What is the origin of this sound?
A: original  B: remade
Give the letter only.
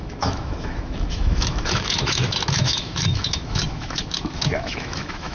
B